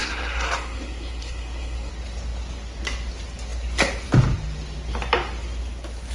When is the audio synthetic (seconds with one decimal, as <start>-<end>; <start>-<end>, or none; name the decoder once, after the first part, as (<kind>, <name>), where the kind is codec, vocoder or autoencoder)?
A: 0.0-1.9 (codec, SNAC)